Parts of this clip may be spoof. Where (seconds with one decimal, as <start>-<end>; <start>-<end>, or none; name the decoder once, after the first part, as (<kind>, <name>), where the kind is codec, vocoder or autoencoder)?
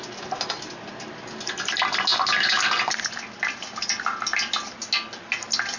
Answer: none